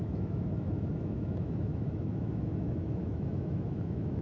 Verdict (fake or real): fake